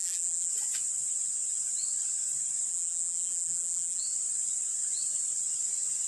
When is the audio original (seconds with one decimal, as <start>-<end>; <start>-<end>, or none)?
0.5-2.7; 4.0-6.1

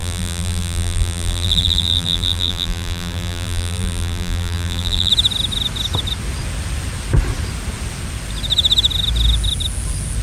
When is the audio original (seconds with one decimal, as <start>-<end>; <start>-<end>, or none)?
5.1-10.2